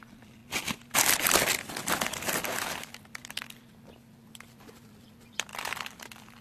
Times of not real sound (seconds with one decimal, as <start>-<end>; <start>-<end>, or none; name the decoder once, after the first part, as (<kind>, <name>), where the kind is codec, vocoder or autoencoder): 0.0-0.4 (vocoder, BigVGAN v2); 3.4-5.5